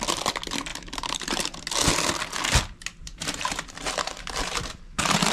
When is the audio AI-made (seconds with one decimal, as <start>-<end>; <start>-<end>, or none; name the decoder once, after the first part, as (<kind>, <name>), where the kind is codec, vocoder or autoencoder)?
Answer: 0.7-1.6 (vocoder, BigVGAN v2); 3.0-5.3